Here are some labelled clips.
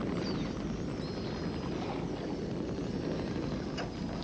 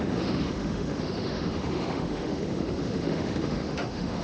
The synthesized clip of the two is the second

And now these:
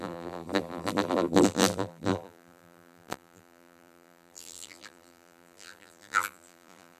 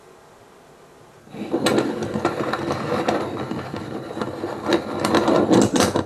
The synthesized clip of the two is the first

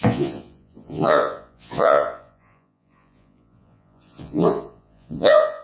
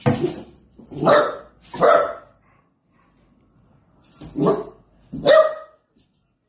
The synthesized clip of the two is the first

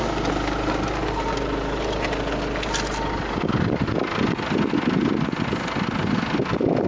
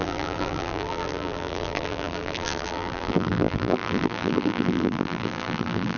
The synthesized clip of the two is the second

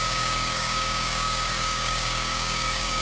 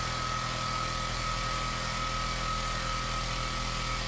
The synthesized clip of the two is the first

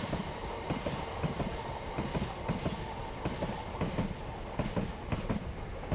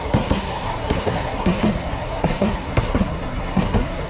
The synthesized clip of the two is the second